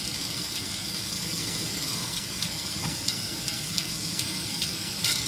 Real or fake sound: fake